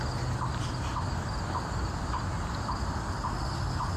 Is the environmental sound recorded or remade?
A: recorded